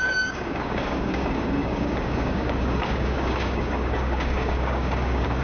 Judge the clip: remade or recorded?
remade